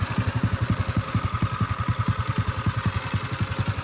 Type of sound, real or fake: real